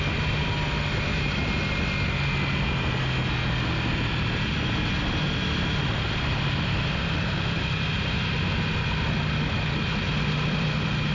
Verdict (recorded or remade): recorded